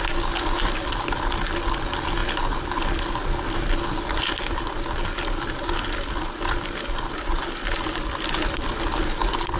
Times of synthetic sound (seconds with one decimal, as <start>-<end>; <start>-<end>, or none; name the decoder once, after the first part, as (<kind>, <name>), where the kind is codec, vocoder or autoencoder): none